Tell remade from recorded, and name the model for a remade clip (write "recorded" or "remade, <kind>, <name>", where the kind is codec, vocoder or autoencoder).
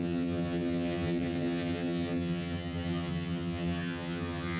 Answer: remade, vocoder, HiFi-GAN